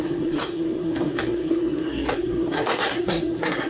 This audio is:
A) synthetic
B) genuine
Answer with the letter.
A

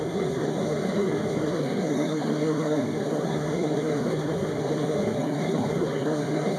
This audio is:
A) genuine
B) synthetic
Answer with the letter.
B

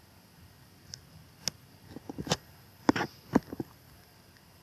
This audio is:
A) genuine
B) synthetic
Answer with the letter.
A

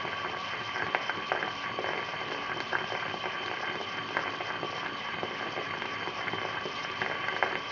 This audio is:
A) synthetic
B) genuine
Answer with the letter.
B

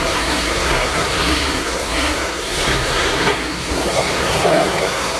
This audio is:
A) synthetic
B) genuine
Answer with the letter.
A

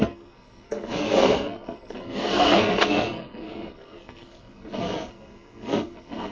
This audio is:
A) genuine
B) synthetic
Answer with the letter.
B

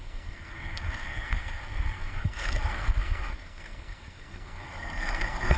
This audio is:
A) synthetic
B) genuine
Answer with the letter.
A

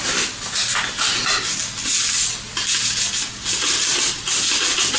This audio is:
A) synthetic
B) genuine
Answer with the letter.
B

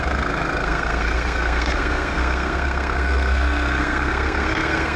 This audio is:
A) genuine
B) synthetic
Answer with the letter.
B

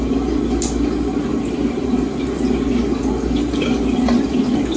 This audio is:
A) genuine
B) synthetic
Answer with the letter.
A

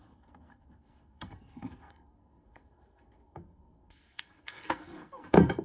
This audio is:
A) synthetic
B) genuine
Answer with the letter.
A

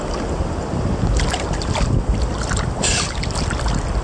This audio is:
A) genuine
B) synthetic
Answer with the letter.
A